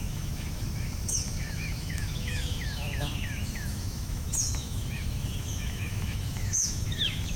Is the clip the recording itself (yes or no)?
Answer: no